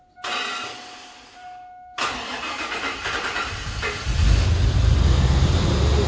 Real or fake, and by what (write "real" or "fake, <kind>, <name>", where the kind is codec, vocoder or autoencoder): real